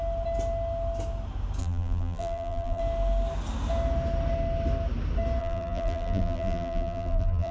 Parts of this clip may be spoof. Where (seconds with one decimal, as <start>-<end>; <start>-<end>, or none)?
1.6-2.8; 5.4-7.5